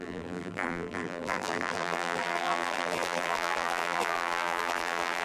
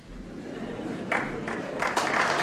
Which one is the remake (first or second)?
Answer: first